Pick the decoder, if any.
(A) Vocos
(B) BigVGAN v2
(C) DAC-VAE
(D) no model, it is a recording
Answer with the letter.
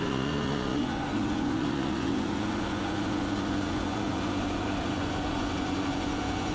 A